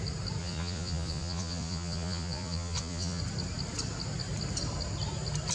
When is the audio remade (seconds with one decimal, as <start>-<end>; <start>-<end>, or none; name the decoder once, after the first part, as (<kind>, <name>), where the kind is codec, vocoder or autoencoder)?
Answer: 0.4-3.2 (vocoder, Vocos)